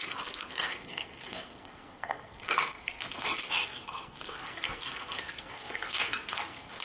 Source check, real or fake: fake